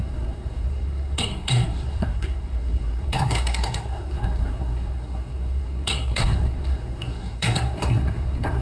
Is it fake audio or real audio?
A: fake